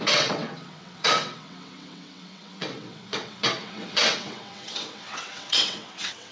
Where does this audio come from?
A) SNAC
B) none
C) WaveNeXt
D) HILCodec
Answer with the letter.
C